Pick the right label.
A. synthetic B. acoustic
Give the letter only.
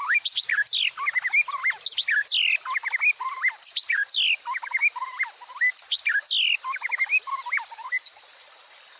B